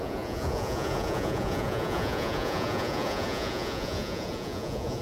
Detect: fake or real fake